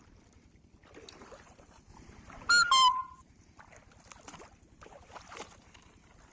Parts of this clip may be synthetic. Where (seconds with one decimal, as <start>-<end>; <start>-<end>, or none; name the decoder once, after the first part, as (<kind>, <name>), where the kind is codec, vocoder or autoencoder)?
1.9-2.5 (vocoder, BigVGAN v2)